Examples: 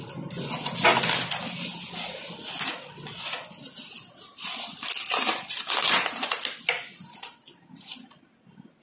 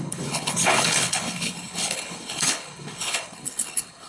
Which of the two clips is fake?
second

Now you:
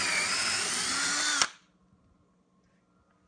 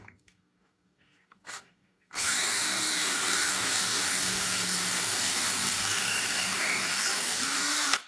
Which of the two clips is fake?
second